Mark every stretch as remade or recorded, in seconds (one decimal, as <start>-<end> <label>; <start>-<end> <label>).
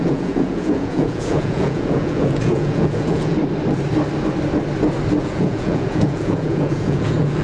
0.0-3.4 remade; 3.4-5.2 recorded; 5.2-7.4 remade